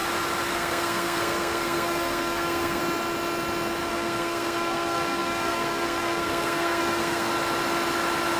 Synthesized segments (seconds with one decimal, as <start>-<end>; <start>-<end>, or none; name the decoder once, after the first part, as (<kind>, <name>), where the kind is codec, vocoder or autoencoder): 0.5-2.8 (codec, SNAC); 3.9-7.3